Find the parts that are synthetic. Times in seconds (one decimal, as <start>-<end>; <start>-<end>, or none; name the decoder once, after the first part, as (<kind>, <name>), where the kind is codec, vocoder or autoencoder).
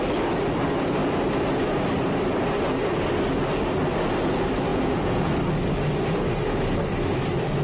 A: 4.7-5.3 (vocoder, Vocos)